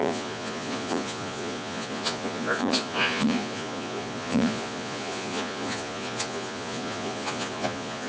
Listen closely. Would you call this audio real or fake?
fake